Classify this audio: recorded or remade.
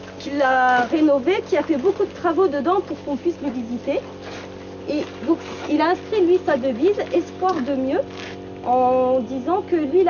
recorded